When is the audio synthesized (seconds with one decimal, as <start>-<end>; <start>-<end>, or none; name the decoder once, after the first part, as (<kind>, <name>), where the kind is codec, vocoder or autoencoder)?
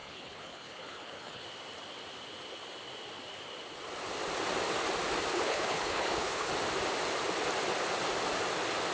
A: 0.0-1.4 (codec, HILCodec); 5.3-6.5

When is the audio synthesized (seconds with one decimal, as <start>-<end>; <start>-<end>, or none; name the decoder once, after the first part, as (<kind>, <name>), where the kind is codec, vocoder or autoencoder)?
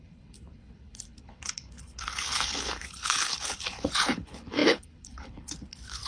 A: 0.0-6.1 (codec, HILCodec)